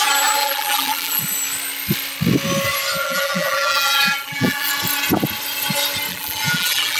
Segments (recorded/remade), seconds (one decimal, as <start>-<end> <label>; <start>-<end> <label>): 0.0-0.4 recorded; 0.4-1.2 remade; 1.2-3.0 recorded; 3.0-4.7 remade; 4.7-6.1 recorded; 6.1-7.0 remade